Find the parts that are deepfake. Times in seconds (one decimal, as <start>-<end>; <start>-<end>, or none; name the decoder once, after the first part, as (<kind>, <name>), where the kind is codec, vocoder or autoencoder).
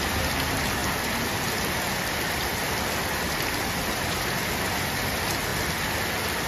none